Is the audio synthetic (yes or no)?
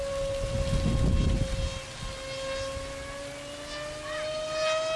no